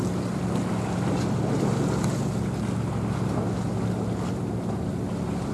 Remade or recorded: recorded